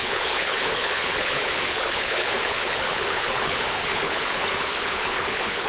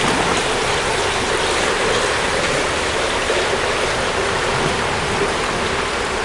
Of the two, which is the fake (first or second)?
first